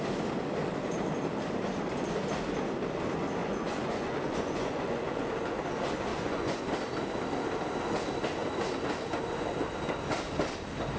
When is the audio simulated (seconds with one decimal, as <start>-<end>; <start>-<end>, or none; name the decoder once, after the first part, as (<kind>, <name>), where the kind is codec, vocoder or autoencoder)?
3.4-5.3 (vocoder, Vocos); 6.1-6.6